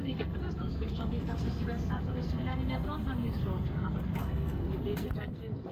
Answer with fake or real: fake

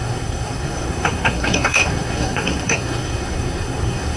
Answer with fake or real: fake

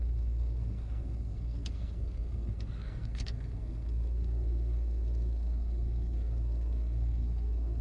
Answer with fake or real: fake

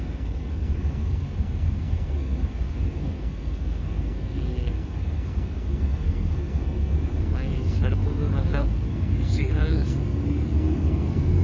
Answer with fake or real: fake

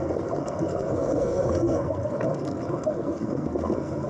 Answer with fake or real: fake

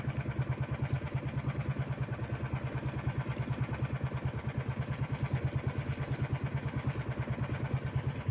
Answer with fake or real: real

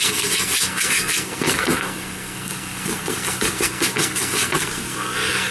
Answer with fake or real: fake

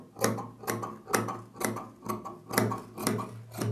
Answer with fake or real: real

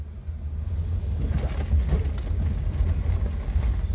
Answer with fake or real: real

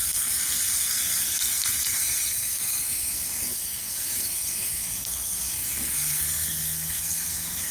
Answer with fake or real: fake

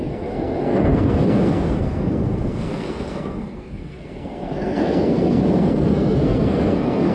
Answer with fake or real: fake